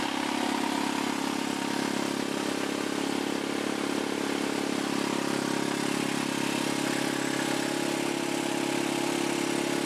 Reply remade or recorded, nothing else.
recorded